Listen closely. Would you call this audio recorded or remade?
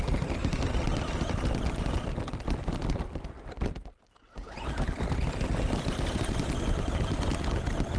recorded